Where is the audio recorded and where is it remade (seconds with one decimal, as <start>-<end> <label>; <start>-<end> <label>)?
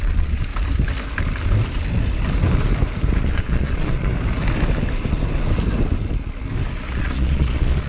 0.0-0.5 remade; 0.5-3.2 recorded; 3.2-4.1 remade; 4.1-6.9 recorded; 6.9-7.9 remade